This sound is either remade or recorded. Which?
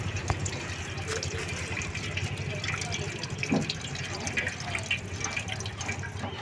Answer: recorded